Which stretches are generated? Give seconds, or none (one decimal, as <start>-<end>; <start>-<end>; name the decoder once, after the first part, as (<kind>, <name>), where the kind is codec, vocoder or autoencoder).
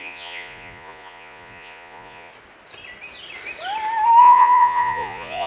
0.0-2.3 (vocoder, Vocos); 4.2-5.5